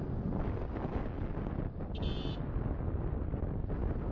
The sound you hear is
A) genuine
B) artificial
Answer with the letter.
A